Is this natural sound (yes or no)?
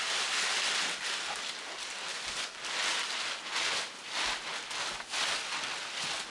no